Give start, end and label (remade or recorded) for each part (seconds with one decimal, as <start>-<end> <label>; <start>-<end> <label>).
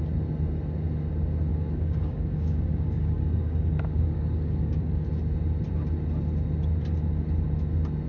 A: 0.0-1.5 recorded; 1.5-5.1 remade; 5.1-8.1 recorded